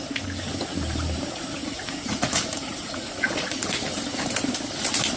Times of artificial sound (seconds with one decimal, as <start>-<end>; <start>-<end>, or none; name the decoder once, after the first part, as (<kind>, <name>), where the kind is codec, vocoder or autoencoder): 1.6-3.7 (vocoder, Vocos)